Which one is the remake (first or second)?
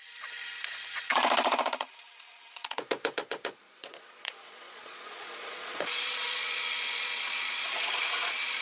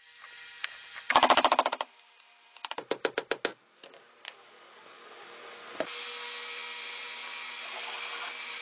first